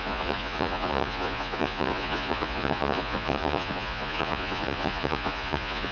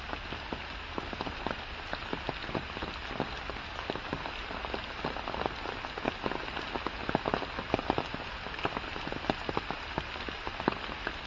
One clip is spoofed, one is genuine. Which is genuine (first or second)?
second